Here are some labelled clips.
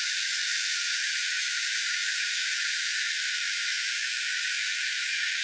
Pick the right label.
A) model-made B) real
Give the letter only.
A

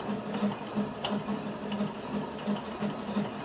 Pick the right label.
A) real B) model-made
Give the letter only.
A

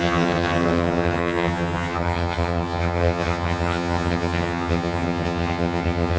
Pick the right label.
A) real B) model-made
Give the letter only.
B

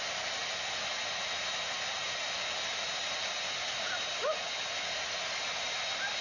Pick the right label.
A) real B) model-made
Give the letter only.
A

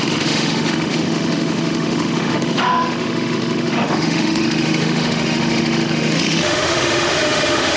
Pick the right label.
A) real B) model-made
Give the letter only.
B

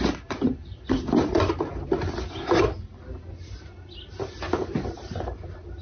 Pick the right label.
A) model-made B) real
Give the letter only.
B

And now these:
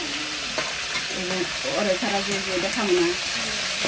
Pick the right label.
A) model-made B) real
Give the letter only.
B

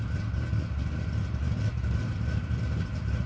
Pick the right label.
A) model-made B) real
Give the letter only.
A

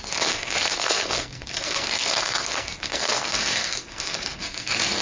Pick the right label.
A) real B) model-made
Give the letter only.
B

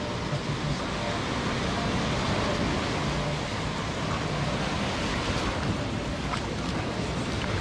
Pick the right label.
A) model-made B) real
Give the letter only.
B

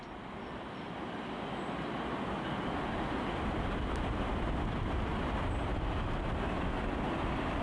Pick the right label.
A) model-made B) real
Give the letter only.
B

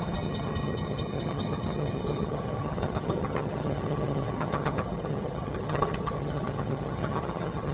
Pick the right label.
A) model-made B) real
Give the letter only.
A